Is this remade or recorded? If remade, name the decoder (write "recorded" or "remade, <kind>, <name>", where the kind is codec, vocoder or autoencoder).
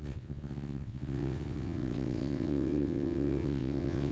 remade, vocoder, WaveNeXt